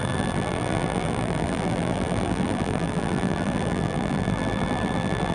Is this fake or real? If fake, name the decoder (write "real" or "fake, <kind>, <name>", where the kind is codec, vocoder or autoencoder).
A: fake, vocoder, BigVGAN v2